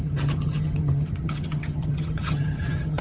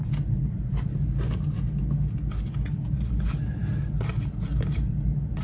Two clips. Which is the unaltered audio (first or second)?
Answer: second